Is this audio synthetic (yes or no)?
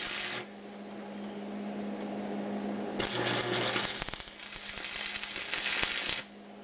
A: no